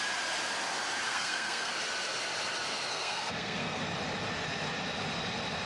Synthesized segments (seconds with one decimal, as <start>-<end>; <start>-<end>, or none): 1.1-1.7; 2.9-3.8